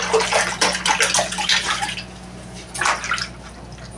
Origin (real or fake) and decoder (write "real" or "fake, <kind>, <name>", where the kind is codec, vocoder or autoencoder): real